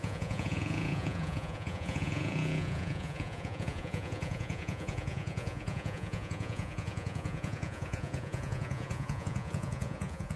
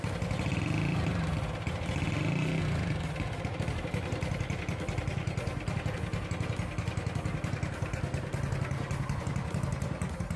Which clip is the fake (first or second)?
first